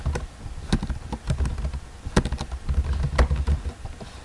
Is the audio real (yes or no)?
yes